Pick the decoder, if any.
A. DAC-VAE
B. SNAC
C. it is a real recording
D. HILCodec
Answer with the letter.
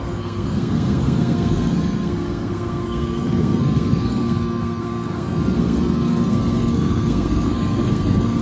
B